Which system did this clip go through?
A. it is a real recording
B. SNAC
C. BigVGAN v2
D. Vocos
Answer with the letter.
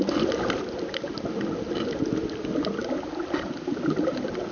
A